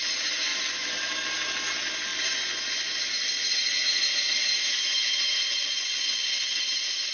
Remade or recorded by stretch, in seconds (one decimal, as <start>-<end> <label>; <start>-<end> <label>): 0.0-7.1 recorded